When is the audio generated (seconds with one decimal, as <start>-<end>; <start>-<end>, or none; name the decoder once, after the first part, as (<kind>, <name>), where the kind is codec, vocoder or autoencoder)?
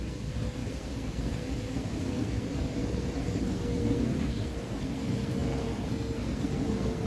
0.0-7.1 (codec, SNAC)